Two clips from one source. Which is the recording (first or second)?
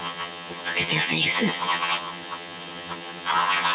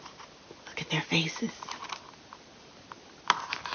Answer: second